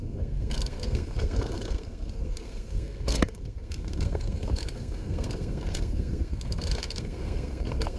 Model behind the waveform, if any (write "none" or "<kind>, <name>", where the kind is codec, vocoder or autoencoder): codec, SNAC